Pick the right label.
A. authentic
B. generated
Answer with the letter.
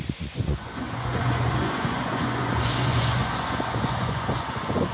B